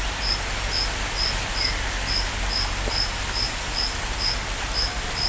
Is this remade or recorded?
recorded